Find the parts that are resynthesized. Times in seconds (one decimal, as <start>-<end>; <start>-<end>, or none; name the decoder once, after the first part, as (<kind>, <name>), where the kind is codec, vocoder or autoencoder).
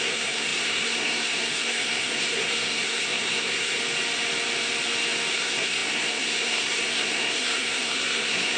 0.0-3.8 (codec, SNAC); 5.3-8.6